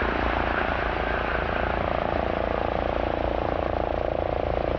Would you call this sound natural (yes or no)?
yes